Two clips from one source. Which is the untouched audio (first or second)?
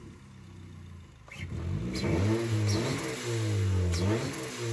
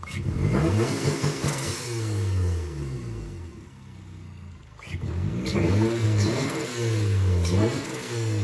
first